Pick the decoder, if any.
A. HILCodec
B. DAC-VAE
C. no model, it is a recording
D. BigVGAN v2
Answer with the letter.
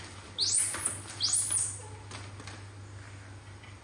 C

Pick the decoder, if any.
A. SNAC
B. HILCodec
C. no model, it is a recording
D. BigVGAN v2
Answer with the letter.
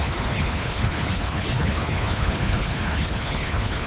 B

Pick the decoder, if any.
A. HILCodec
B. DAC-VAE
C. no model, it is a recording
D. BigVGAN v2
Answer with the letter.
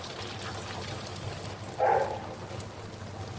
C